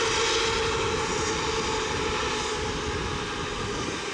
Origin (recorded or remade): recorded